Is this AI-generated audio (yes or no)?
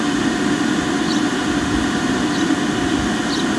no